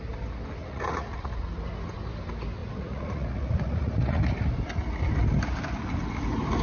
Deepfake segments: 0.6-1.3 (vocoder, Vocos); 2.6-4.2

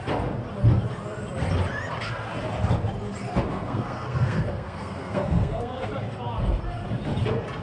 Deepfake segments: 3.5-5.9 (codec, SNAC)

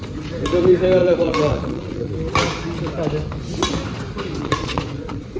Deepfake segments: 1.0-2.1 (vocoder, Vocos); 4.4-5.4

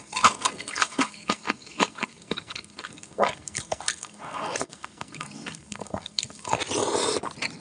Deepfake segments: 0.0-6.6 (codec, SNAC)

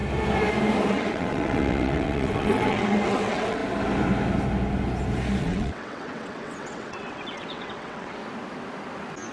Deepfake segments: 0.9-3.6 (vocoder, WaveNeXt); 5.4-8.2

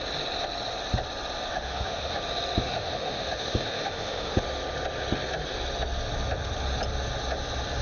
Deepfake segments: 1.5-2.2 (autoencoder, DAC-VAE); 2.7-4.4

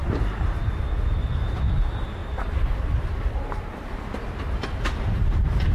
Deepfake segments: 0.0-0.8 (vocoder, BigVGAN v2); 2.2-3.9